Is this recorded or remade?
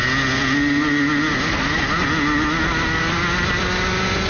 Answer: recorded